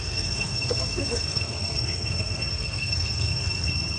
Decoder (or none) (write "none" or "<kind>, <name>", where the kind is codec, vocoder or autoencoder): codec, SNAC